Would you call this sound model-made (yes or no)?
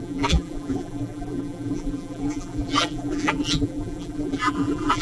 yes